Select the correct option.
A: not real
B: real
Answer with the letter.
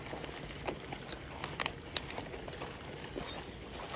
B